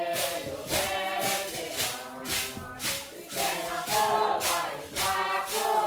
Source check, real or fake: real